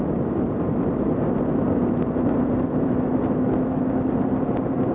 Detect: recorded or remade recorded